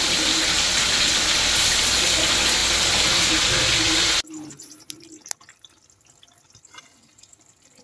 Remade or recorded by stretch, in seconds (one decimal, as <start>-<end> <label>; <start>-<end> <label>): 0.0-7.8 recorded

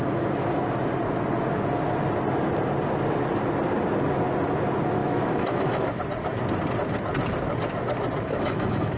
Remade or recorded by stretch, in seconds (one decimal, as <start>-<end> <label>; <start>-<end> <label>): 0.0-0.6 remade; 0.6-5.0 recorded; 5.0-6.0 remade; 6.0-8.3 recorded; 8.3-9.0 remade